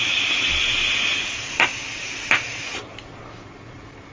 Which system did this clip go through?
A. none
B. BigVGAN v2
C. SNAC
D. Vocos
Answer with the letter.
A